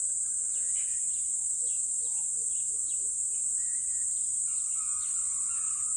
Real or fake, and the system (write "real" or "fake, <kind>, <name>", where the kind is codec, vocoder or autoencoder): real